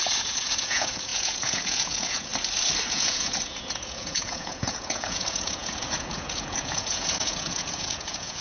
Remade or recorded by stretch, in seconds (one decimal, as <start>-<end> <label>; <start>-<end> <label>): 0.0-2.3 remade; 2.3-2.9 recorded; 2.9-8.4 remade